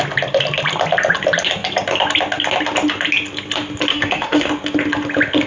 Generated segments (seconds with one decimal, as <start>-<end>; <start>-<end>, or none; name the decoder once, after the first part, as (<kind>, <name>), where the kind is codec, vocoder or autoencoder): 3.9-4.5 (autoencoder, DAC-VAE)